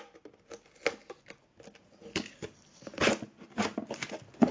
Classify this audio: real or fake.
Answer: real